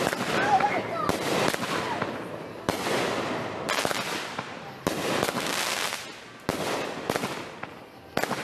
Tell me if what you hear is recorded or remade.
recorded